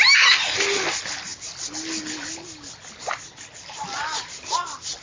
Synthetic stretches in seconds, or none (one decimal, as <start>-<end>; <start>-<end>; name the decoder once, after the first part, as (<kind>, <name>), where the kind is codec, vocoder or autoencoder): none

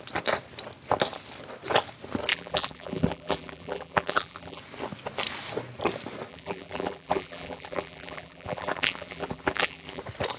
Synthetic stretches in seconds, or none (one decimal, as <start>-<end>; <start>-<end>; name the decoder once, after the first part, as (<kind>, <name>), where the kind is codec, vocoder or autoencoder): 2.3-4.6 (vocoder, BigVGAN v2); 6.3-10.0

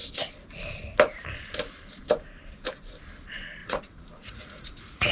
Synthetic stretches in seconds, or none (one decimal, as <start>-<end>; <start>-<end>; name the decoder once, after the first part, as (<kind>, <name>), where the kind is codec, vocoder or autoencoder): 3.6-5.1 (vocoder, Vocos)